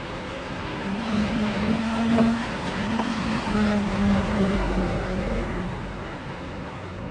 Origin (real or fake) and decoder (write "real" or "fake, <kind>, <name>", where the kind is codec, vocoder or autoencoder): fake, codec, SNAC